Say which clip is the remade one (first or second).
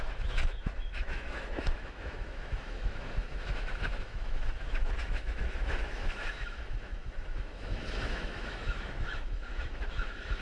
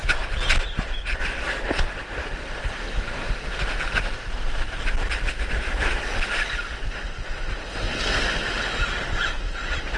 first